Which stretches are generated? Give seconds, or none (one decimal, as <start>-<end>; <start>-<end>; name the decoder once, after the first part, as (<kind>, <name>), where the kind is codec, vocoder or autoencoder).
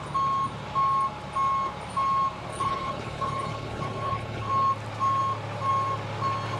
2.5-4.5 (codec, HILCodec)